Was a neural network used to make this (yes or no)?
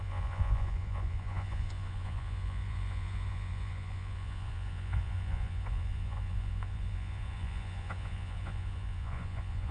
yes